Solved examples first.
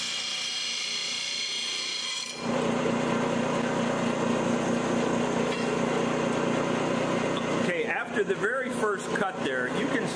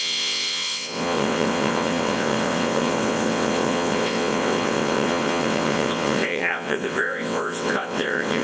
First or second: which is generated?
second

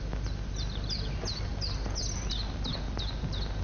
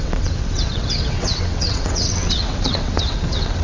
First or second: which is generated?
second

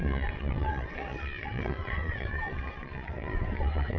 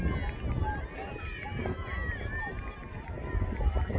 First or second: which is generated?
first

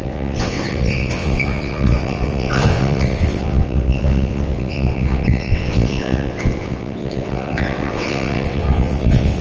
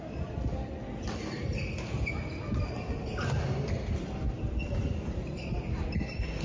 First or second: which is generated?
first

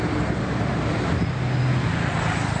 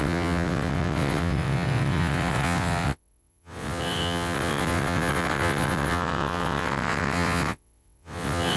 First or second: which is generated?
second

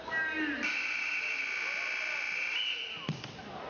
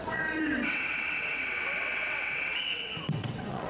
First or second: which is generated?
second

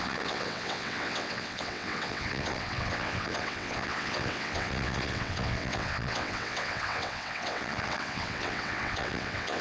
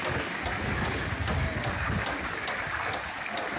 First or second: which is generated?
first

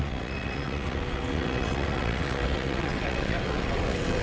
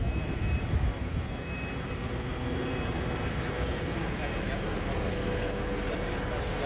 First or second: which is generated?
first